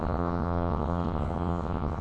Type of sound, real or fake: fake